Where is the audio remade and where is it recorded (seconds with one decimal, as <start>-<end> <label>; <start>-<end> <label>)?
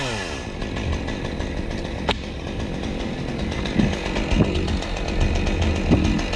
0.0-6.4 recorded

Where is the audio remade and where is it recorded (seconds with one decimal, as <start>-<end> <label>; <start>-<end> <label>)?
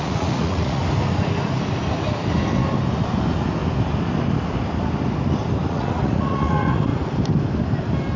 0.0-0.8 remade; 0.8-5.7 recorded; 5.7-6.9 remade; 6.9-8.2 recorded